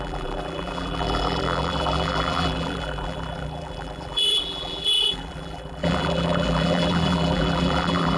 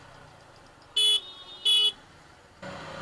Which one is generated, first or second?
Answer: first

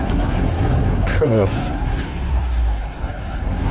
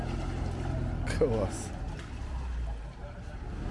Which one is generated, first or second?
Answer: first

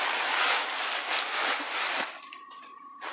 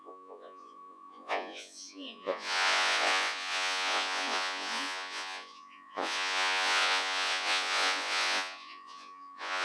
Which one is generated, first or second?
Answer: second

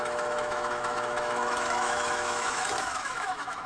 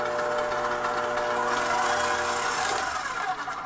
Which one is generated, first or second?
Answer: first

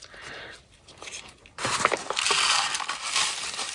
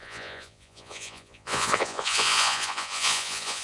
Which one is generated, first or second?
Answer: second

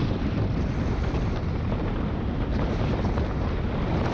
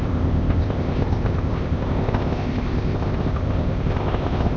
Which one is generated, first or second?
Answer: second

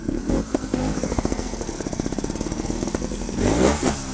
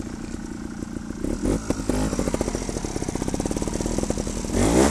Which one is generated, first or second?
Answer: first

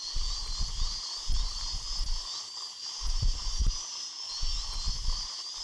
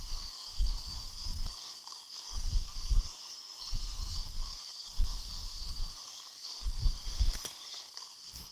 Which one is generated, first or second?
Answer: second